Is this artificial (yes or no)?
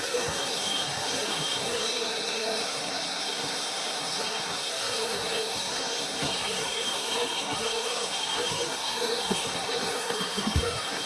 yes